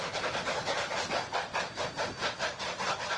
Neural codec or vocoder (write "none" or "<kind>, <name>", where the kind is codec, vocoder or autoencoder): none